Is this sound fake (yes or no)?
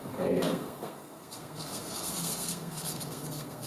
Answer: yes